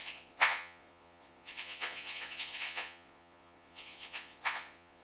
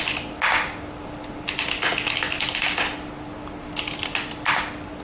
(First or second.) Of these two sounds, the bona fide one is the second